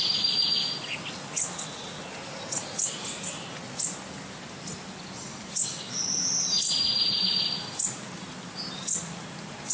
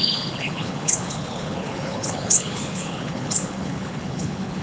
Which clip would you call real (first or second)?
first